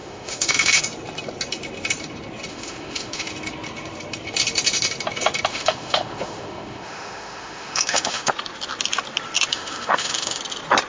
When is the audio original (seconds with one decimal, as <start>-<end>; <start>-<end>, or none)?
0.8-2.5; 3.3-5.5; 8.3-9.5; 10.4-10.9